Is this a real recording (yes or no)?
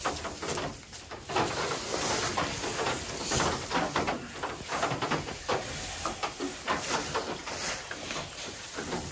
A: yes